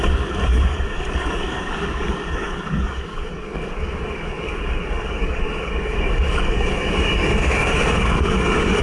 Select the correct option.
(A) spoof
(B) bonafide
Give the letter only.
A